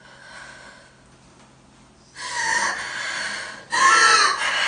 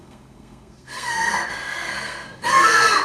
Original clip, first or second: first